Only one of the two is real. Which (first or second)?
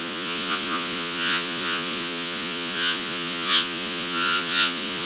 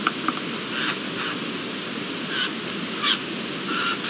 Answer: second